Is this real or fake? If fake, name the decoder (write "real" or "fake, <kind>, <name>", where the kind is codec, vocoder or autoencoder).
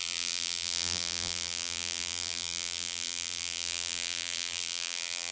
fake, vocoder, BigVGAN v2